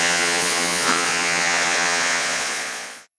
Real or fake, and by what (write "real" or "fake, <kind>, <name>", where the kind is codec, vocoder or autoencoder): fake, vocoder, Vocos